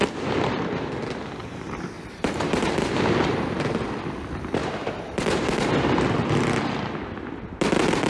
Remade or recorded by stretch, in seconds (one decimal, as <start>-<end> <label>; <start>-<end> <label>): 0.0-1.4 recorded; 1.4-3.8 remade; 3.8-4.6 recorded; 4.6-5.7 remade; 5.7-8.1 recorded